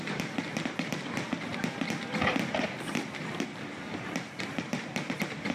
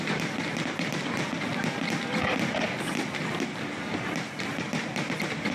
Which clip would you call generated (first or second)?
first